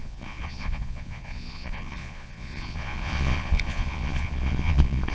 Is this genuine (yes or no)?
no